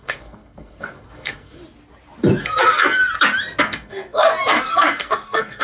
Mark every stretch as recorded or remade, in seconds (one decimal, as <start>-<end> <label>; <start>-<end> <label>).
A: 0.0-1.6 remade; 1.6-2.4 recorded; 2.4-3.0 remade; 3.0-3.6 recorded; 3.6-5.6 remade